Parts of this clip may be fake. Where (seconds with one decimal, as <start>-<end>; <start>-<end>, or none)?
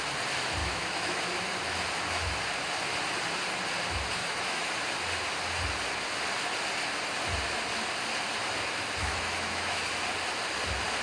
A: 0.6-1.2; 4.2-4.7; 9.0-9.9